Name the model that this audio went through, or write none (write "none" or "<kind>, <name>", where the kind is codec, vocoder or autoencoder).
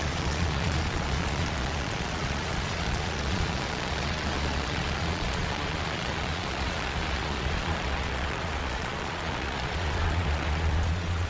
vocoder, Vocos